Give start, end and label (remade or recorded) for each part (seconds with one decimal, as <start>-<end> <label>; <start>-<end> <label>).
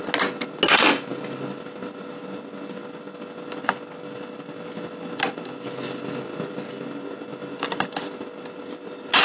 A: 0.0-9.2 recorded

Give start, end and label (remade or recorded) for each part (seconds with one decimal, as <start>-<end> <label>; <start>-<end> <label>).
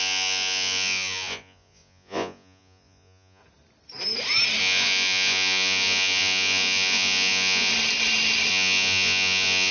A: 0.0-3.4 remade; 3.4-4.6 recorded; 4.6-7.7 remade; 7.7-8.5 recorded; 8.5-9.7 remade